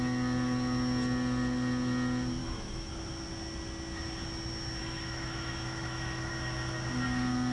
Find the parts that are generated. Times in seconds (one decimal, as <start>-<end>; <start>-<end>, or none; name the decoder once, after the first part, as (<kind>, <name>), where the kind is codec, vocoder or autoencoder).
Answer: 2.4-2.9 (autoencoder, DAC-VAE); 4.8-6.3